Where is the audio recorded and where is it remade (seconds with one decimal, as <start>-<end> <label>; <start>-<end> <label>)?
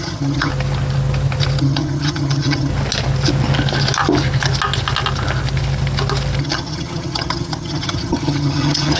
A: 0.0-0.5 remade; 0.5-1.6 recorded; 1.6-2.7 remade; 2.7-6.4 recorded; 6.4-9.0 remade